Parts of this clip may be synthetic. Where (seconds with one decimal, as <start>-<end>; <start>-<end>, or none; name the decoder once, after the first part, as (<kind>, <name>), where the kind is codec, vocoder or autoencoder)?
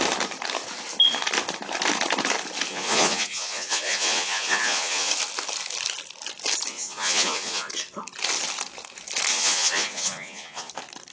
2.7-5.1 (vocoder, Vocos); 6.7-7.7; 9.3-10.7